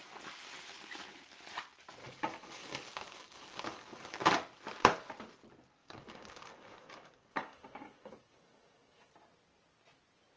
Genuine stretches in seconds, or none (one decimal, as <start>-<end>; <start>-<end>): 0.0-2.0; 4.2-5.8; 9.1-10.4